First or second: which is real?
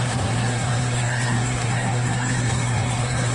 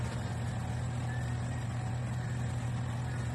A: second